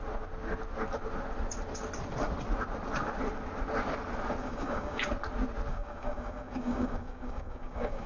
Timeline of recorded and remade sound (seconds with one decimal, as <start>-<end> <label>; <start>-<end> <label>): 0.0-4.4 recorded; 4.4-5.1 remade; 5.1-5.7 recorded; 5.7-8.1 remade